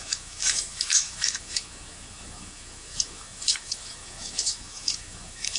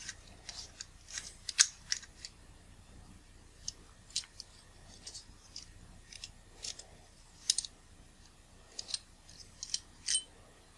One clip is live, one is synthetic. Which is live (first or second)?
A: second